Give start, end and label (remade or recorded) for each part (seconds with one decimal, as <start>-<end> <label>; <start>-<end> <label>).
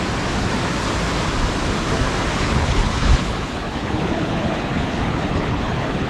0.0-2.4 recorded; 2.4-6.1 remade